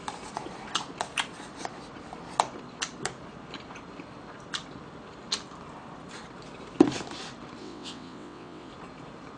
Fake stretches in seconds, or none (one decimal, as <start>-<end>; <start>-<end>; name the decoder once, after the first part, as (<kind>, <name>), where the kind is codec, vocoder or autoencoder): 7.6-8.7 (vocoder, WaveNeXt)